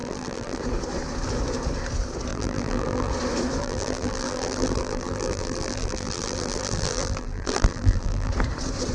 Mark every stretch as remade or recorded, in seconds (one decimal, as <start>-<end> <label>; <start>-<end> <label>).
0.0-0.6 remade; 0.6-2.3 recorded; 2.3-3.1 remade; 3.1-3.6 recorded; 3.6-8.3 remade; 8.3-8.9 recorded